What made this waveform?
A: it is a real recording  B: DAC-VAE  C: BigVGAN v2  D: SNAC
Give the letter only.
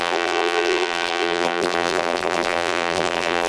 C